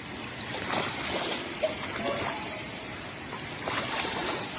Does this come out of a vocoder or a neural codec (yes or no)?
no